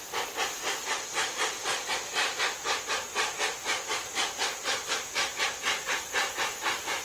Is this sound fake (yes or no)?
no